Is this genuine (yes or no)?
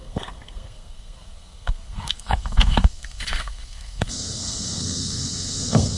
no